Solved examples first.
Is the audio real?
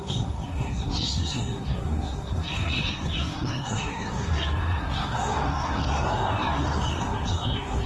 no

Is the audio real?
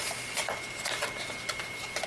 yes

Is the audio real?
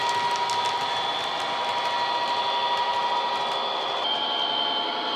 yes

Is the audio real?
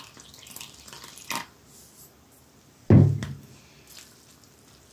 yes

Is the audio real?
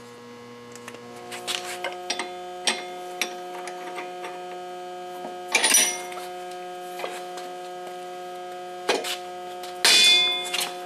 yes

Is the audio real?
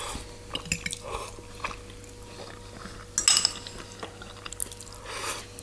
yes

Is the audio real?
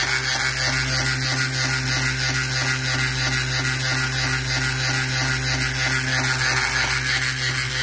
yes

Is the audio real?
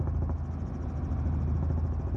yes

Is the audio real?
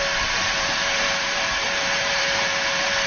no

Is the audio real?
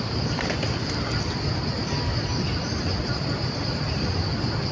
yes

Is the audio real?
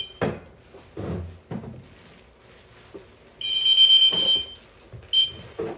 yes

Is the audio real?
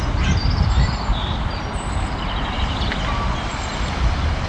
yes